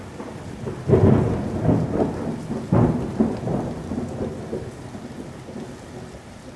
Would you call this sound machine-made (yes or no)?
no